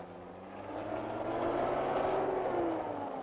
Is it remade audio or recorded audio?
recorded